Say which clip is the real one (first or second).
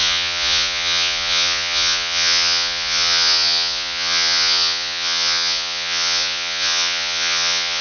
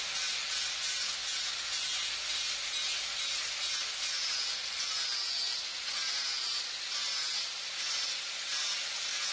second